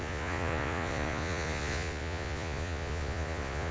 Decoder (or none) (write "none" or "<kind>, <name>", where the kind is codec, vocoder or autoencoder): vocoder, Vocos